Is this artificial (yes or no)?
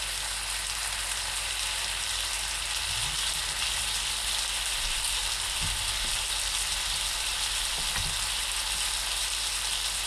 no